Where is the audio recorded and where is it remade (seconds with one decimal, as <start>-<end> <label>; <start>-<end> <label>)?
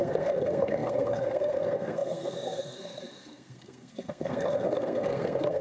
0.0-5.6 remade